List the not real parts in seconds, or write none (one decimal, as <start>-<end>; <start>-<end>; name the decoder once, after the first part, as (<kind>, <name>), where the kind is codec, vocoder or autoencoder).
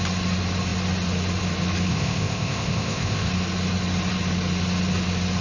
1.9-3.3 (codec, ZipCodec)